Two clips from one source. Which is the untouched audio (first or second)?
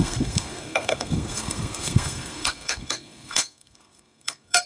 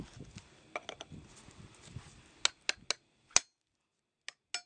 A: second